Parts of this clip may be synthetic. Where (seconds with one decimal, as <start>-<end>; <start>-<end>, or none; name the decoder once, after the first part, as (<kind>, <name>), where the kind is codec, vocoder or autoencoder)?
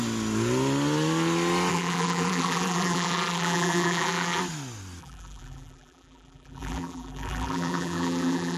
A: 1.7-4.4 (vocoder, BigVGAN v2); 5.0-8.6